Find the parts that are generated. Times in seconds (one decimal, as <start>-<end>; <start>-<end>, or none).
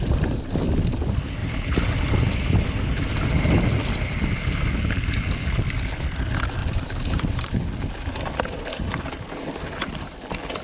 1.4-2.0; 6.6-7.6